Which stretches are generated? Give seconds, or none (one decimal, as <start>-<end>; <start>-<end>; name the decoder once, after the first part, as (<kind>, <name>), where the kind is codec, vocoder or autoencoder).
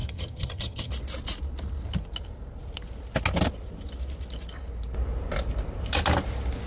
0.0-0.9 (vocoder, HiFi-GAN)